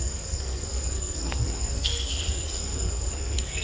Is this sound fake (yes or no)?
yes